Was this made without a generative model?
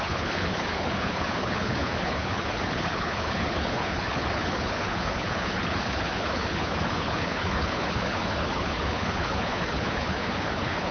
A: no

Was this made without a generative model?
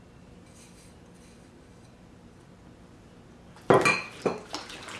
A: yes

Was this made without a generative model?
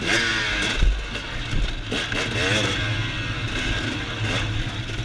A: yes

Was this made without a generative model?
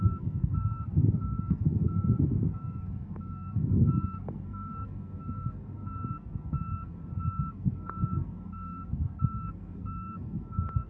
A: no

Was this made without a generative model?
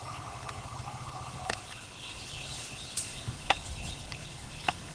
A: no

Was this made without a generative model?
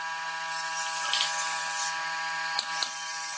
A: yes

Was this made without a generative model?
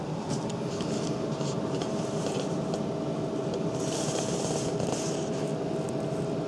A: yes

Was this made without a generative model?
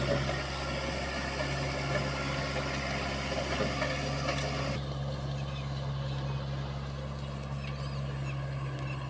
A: yes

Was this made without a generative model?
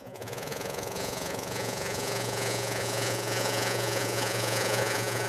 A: no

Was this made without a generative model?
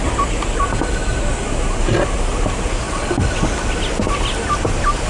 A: yes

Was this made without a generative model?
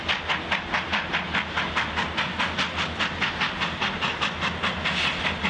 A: yes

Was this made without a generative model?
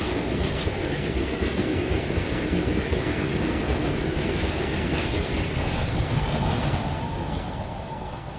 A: no